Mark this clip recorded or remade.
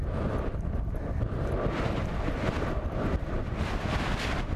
recorded